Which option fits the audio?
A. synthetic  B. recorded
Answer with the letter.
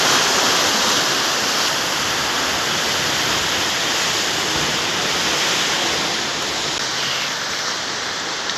B